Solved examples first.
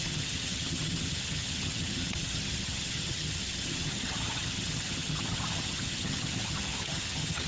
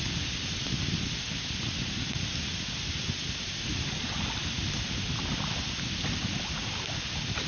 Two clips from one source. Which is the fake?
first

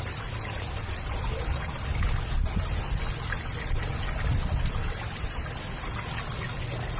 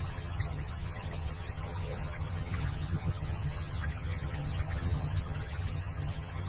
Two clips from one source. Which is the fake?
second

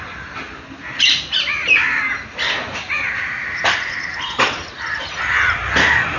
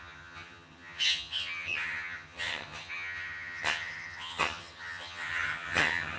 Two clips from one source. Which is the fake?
second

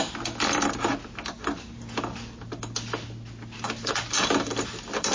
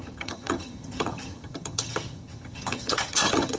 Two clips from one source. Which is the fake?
second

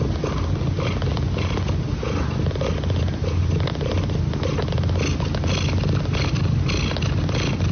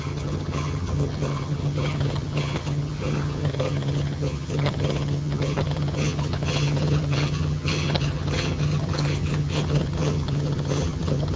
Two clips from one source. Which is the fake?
second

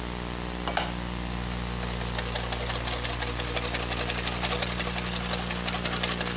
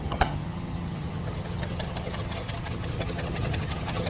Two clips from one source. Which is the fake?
second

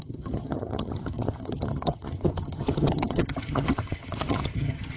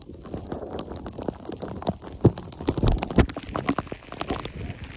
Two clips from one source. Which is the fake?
first